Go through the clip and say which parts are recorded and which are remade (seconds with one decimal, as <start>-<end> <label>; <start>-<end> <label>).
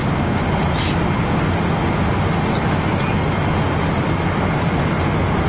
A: 0.0-5.5 recorded